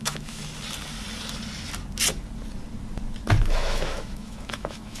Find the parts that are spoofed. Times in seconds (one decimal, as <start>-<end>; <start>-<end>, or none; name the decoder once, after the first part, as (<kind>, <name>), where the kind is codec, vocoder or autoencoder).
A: 0.0-0.4 (autoencoder, DAC-VAE); 3.4-5.0